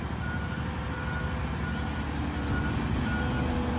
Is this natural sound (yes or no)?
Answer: yes